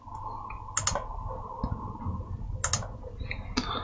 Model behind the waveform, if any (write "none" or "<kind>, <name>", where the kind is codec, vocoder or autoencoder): none